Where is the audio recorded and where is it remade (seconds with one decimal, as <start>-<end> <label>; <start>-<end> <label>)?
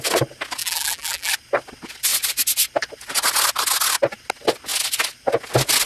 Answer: 0.0-0.6 recorded; 0.6-1.3 remade; 1.3-5.9 recorded